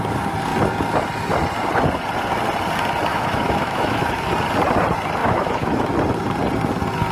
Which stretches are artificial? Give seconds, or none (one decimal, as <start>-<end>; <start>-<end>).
3.1-4.3; 5.2-5.9